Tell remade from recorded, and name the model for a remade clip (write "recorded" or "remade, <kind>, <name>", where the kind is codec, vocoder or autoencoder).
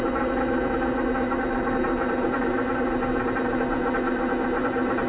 recorded